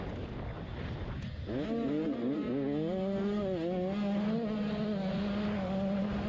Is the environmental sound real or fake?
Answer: real